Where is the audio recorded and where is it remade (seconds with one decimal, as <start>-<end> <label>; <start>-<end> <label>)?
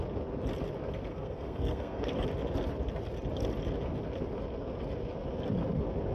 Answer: 0.0-1.1 recorded; 1.1-2.1 remade; 2.1-6.1 recorded